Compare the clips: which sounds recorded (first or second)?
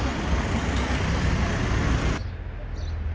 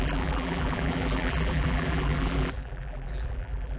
first